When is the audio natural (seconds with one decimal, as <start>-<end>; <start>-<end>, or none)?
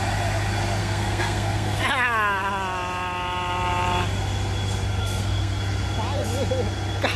0.0-0.8; 1.8-5.0; 5.6-7.2